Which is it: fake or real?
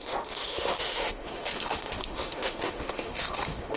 fake